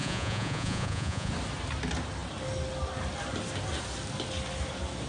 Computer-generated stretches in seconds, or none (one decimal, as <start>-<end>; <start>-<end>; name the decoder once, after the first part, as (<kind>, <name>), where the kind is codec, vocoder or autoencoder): 0.0-1.3 (vocoder, Vocos)